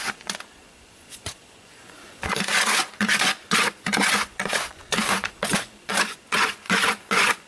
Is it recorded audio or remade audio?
remade